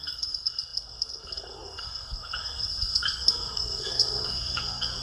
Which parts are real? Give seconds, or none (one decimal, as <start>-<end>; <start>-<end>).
none